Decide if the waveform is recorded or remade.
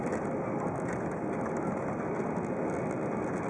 recorded